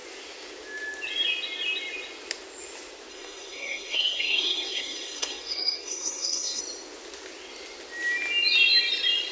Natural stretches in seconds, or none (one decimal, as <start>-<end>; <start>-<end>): 0.0-3.1; 6.6-9.3